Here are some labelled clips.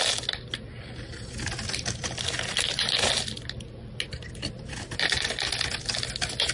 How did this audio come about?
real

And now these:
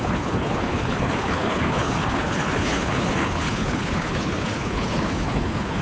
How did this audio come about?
fake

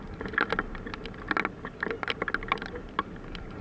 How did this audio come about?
real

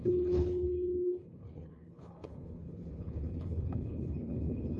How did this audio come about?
fake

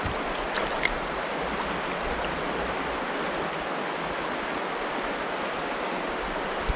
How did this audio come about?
real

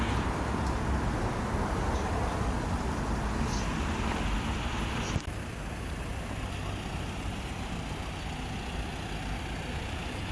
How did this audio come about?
real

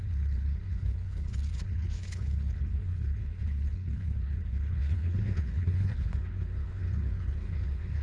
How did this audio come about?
fake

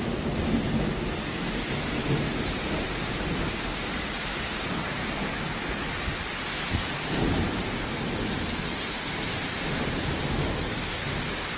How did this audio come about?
real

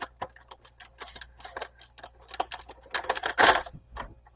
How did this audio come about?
real